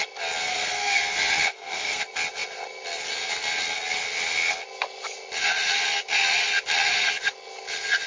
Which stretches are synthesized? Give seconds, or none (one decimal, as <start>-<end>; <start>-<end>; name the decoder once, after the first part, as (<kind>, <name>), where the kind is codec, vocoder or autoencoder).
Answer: 0.5-1.0 (codec, SNAC); 1.5-2.0